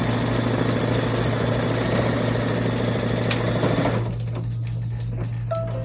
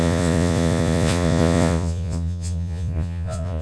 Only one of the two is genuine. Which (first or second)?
first